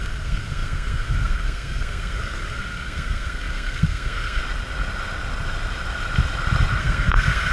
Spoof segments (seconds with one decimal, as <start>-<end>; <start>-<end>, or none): 0.0-4.4; 6.8-7.5